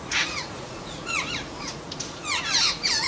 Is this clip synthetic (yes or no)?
yes